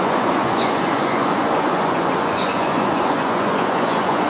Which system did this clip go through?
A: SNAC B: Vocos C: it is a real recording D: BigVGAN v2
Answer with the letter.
B